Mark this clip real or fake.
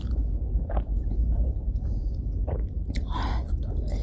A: fake